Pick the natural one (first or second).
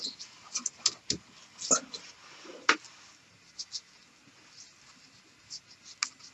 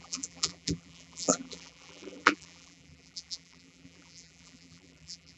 first